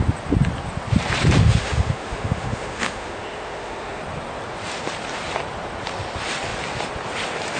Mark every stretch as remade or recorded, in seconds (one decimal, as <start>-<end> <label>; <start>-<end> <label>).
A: 0.0-1.4 recorded; 1.4-4.0 remade; 4.0-7.6 recorded